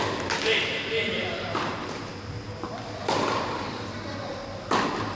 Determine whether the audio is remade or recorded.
recorded